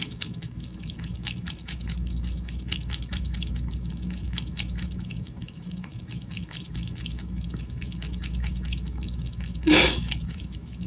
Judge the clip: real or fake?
fake